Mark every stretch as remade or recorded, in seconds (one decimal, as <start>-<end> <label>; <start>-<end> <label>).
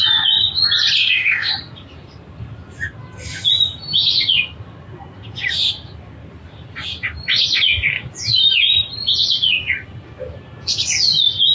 0.0-1.0 recorded; 1.0-1.5 remade; 1.5-11.5 recorded